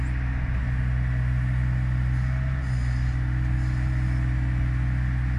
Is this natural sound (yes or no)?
yes